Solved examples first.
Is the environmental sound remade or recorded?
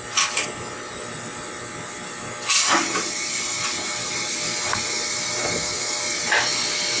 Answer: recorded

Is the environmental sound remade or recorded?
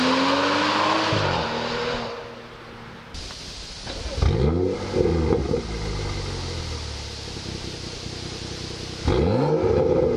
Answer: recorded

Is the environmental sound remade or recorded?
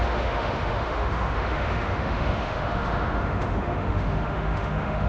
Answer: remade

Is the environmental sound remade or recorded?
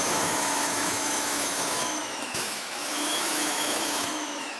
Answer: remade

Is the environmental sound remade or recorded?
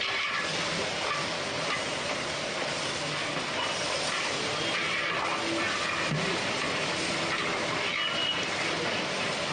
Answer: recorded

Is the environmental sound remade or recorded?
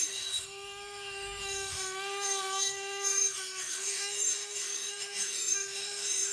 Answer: remade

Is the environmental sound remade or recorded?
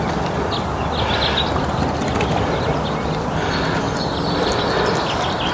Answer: recorded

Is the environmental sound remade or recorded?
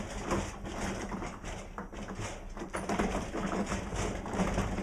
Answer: recorded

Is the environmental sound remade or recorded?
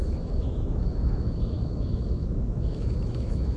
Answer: remade